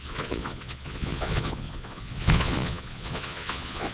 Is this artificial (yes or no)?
yes